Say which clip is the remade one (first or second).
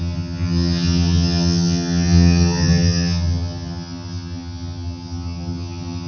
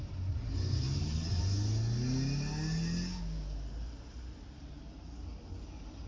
first